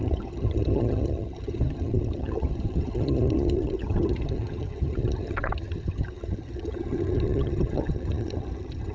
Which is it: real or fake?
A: fake